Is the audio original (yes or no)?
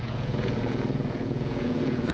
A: no